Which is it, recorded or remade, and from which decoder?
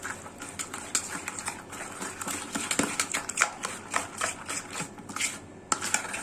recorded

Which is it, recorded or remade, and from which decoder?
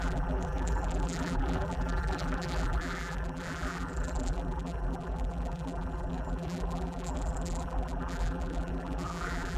remade, vocoder, BigVGAN v2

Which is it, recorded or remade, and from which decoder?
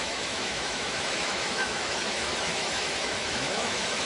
remade, autoencoder, DAC-VAE